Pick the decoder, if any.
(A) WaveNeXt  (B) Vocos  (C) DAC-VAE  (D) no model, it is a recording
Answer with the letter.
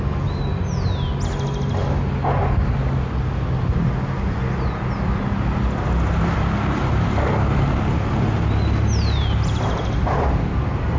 D